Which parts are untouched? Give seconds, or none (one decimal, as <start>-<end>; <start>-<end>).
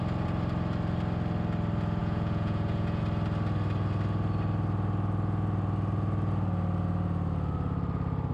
0.0-2.0; 3.0-8.3